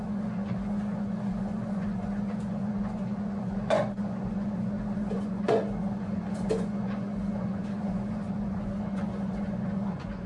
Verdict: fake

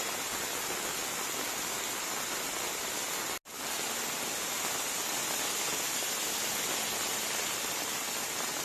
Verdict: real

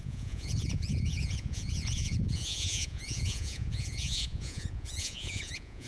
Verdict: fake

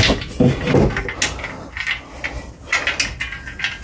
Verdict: real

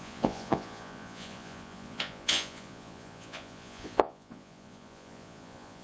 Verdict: fake